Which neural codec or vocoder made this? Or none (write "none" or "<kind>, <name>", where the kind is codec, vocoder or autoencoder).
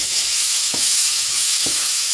autoencoder, DAC-VAE